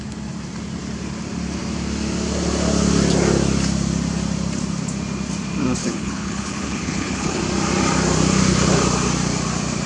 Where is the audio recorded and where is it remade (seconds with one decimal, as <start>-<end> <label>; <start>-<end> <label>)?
0.0-5.8 recorded; 5.8-7.4 remade; 7.4-9.9 recorded